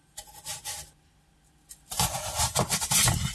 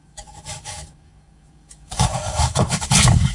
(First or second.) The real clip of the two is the first